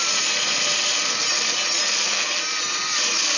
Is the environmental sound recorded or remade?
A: recorded